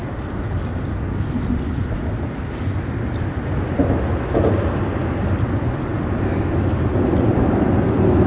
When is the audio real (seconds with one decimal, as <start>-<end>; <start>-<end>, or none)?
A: 0.0-8.3